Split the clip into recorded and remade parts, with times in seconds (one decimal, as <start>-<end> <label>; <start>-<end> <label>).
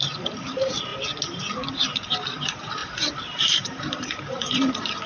0.0-0.9 remade; 0.9-1.7 recorded; 1.7-5.1 remade